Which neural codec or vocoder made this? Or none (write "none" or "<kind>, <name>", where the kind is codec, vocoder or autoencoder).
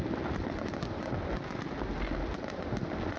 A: none